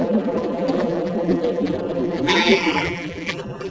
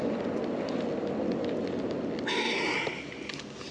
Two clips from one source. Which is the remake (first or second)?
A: first